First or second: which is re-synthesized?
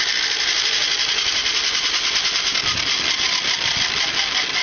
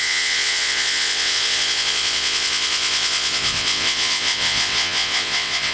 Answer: second